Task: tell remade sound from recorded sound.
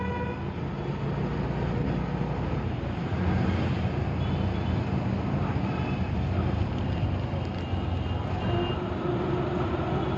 recorded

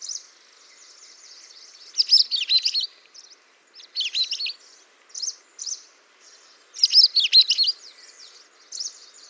recorded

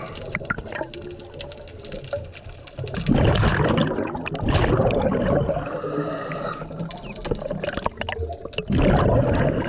recorded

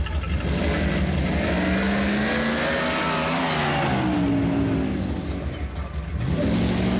recorded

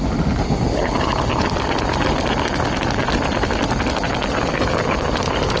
recorded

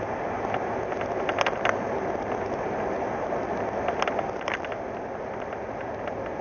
recorded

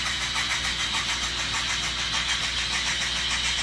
recorded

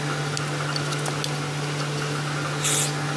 recorded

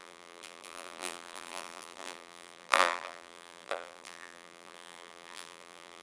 remade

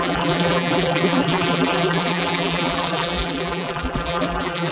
remade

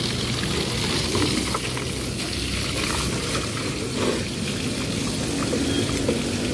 recorded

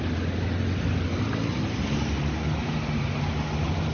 recorded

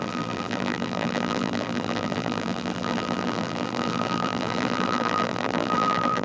remade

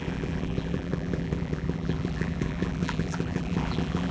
remade